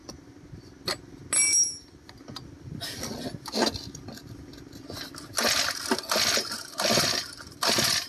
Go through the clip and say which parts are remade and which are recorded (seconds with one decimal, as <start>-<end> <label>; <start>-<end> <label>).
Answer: 0.0-8.1 recorded